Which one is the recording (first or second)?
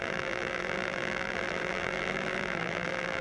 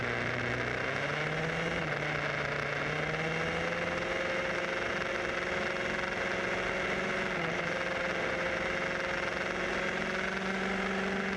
second